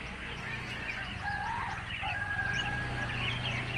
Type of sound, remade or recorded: remade